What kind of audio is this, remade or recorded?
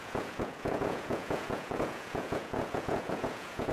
remade